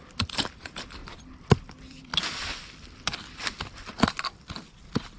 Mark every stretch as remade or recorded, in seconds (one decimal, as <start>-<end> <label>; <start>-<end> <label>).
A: 0.0-1.0 remade; 1.0-1.6 recorded; 1.6-2.1 remade; 2.1-5.2 recorded